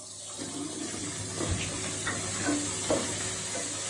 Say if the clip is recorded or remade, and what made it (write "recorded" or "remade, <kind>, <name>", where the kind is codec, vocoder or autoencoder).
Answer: recorded